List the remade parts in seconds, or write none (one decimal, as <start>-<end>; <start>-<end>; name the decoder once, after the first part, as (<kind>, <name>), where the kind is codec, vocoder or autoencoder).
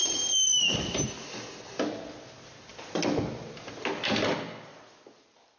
0.0-2.3 (vocoder, BigVGAN v2)